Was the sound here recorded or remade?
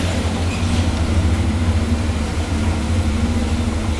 recorded